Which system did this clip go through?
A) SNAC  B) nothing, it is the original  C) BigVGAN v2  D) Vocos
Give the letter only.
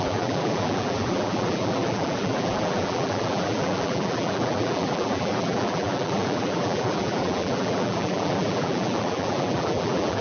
C